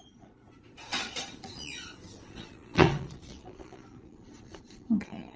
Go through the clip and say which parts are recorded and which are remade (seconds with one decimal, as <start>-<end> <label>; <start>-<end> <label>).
0.0-5.4 remade